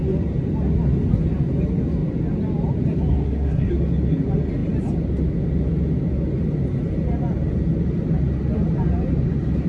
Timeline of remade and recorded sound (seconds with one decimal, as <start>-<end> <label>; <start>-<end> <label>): 0.0-3.1 recorded; 3.1-3.7 remade; 3.7-9.7 recorded